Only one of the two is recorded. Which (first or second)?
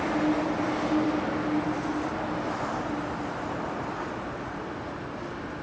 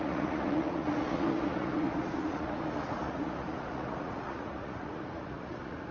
first